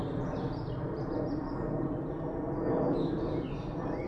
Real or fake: real